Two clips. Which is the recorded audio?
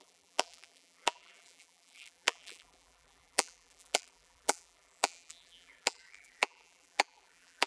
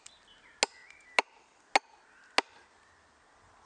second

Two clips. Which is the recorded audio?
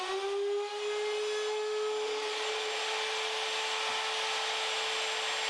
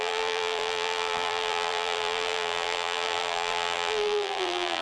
first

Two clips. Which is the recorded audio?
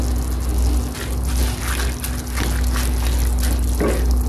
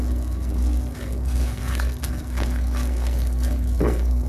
first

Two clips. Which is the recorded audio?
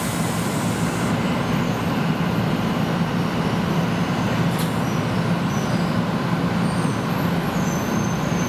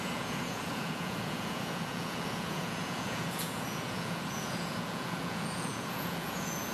first